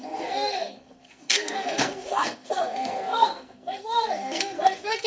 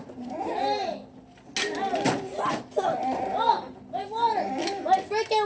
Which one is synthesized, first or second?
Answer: first